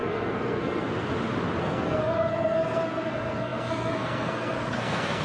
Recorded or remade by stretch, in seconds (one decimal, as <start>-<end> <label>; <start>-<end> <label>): 0.0-1.1 remade; 1.1-1.6 recorded; 1.6-5.2 remade